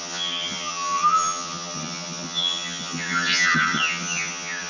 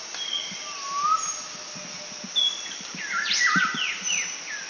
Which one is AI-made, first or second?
first